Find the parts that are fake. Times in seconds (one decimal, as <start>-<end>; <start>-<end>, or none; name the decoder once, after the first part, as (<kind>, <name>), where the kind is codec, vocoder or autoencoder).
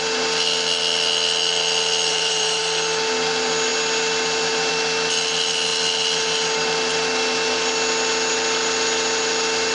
2.1-2.6 (vocoder, BigVGAN v2)